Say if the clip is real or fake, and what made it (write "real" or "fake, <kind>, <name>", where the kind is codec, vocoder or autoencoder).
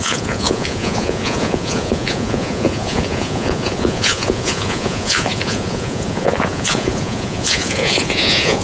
fake, vocoder, Vocos